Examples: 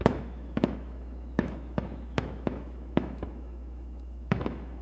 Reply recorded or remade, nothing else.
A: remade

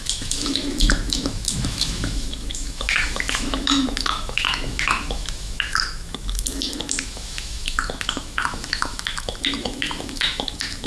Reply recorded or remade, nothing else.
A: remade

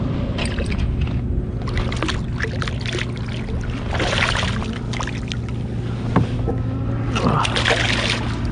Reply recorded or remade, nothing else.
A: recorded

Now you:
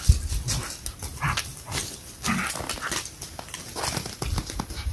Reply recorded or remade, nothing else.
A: recorded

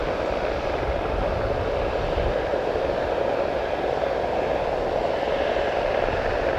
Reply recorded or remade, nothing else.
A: recorded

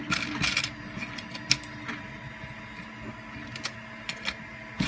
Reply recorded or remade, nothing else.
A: recorded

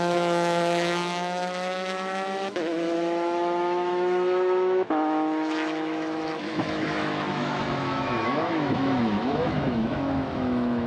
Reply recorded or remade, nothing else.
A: remade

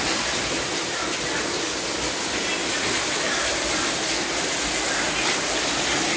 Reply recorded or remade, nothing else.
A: recorded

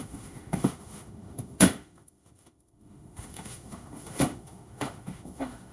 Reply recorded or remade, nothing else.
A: remade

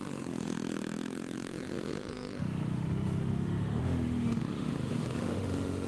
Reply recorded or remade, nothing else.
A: remade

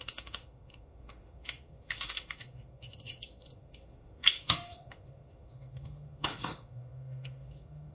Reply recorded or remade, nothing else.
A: remade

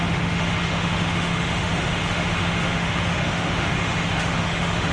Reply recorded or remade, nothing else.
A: remade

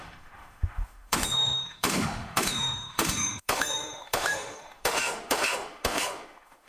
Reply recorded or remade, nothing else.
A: remade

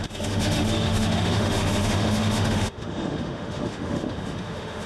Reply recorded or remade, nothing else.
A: remade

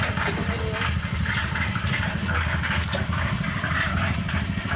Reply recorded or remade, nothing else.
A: recorded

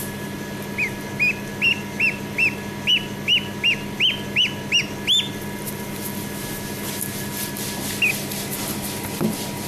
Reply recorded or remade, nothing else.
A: recorded